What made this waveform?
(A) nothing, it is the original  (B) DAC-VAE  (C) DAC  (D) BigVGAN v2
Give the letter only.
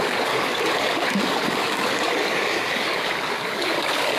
C